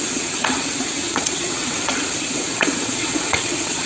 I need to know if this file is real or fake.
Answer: fake